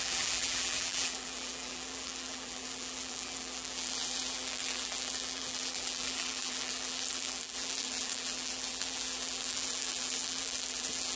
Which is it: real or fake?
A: fake